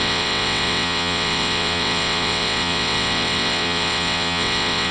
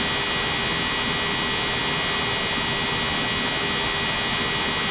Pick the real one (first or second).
second